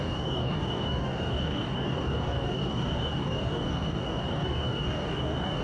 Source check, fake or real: fake